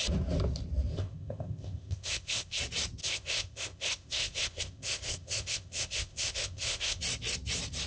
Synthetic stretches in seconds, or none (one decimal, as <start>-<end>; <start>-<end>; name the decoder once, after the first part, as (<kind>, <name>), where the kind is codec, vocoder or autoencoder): 0.9-2.6 (codec, ZipCodec); 3.0-7.0